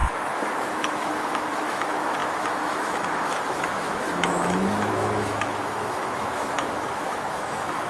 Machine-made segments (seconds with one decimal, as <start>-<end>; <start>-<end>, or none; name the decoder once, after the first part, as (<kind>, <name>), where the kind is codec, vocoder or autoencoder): 0.0-7.9 (autoencoder, DAC-VAE)